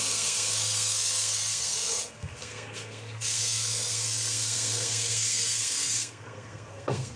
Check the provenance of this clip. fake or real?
fake